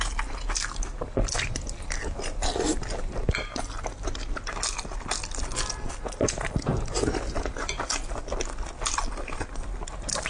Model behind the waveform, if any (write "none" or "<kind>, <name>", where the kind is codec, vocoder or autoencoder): none